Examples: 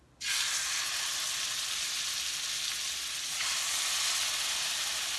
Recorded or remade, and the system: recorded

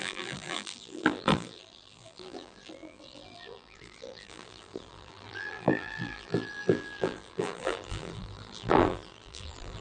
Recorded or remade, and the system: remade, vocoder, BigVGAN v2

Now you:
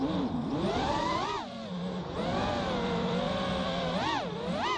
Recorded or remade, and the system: remade, vocoder, BigVGAN v2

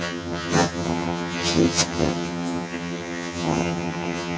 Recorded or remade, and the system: remade, vocoder, HiFi-GAN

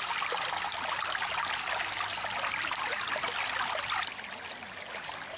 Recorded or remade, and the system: recorded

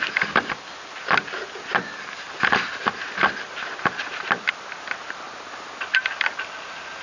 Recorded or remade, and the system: recorded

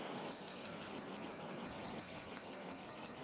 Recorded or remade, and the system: remade, codec, SNAC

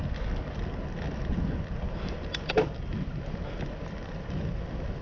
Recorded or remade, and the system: recorded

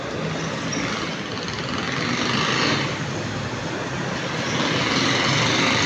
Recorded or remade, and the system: recorded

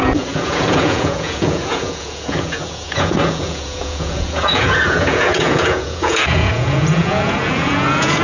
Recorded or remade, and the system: remade, vocoder, Vocos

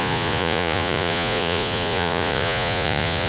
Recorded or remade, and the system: remade, vocoder, Vocos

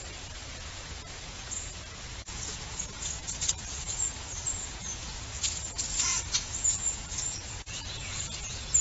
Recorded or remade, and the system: remade, vocoder, Vocos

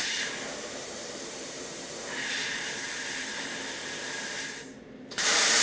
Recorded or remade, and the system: remade, vocoder, BigVGAN v2